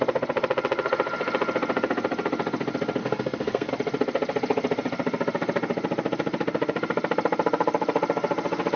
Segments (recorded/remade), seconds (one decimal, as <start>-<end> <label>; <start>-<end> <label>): 0.0-3.0 recorded; 3.0-3.7 remade; 3.7-8.8 recorded